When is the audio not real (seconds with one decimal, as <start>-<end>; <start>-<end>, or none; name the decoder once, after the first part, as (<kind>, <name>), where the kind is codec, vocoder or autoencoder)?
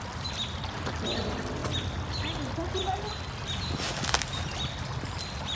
none